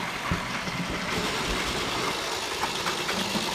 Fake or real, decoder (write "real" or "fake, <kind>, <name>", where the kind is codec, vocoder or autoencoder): real